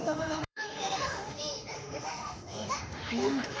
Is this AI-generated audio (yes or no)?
yes